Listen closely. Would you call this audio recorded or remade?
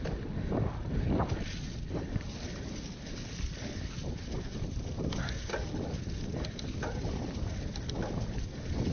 recorded